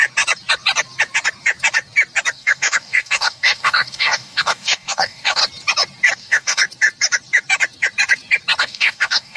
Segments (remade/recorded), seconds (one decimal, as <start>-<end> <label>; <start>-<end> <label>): 0.0-2.3 recorded; 2.3-5.4 remade; 5.4-6.1 recorded; 6.1-6.6 remade; 6.6-8.6 recorded; 8.6-9.4 remade

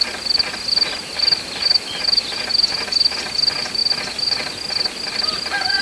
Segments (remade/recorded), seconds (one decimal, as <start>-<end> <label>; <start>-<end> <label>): 0.0-5.8 recorded

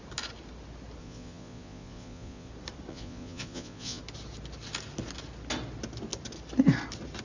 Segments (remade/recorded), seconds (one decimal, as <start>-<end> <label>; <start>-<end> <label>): 0.0-1.0 recorded; 1.0-2.5 remade; 2.5-2.9 recorded; 2.9-4.0 remade; 4.0-7.2 recorded